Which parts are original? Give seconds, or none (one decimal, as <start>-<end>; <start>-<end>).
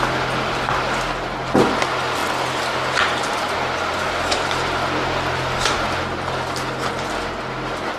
0.0-8.0